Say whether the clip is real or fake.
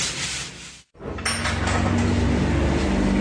real